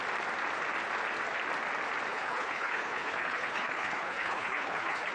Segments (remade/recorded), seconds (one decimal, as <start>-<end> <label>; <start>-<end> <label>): 0.0-2.1 recorded; 2.1-5.1 remade